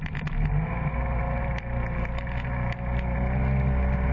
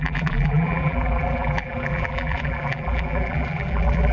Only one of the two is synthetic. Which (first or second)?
second